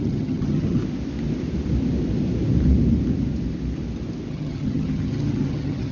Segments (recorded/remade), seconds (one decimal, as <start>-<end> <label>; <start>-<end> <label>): 0.0-0.8 remade; 0.8-4.3 recorded; 4.3-5.9 remade

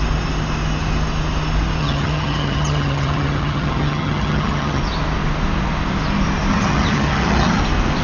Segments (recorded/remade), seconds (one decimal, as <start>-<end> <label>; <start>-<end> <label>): 0.0-1.8 recorded; 1.8-4.8 remade; 4.8-6.5 recorded; 6.5-7.6 remade; 7.6-8.0 recorded